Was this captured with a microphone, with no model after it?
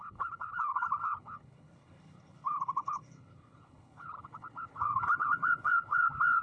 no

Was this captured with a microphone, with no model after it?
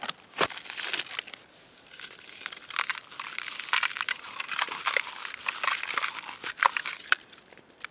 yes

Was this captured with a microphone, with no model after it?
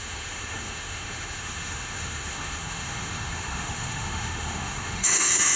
no